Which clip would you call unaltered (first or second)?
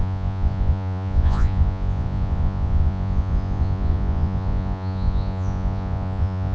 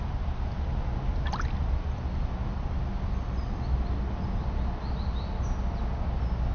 second